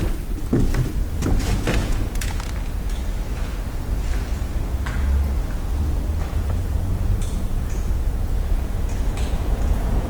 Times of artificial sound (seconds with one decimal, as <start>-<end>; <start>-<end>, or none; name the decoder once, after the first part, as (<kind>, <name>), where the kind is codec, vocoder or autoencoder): 1.8-2.4 (vocoder, Vocos); 6.3-10.1

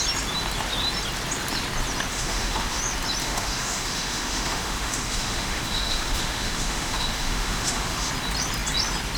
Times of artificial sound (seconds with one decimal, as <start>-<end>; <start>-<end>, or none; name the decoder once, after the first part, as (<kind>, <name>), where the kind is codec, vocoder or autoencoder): 2.1-2.8 (autoencoder, DAC-VAE); 3.2-8.1